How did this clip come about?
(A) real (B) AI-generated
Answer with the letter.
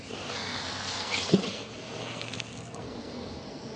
B